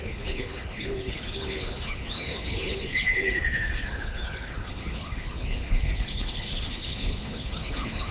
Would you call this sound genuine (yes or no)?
no